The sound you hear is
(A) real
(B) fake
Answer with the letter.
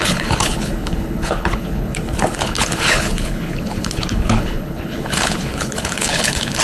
B